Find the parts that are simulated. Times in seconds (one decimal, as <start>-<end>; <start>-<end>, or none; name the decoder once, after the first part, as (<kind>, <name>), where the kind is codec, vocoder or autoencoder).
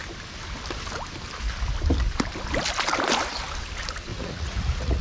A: 4.1-5.0 (vocoder, Vocos)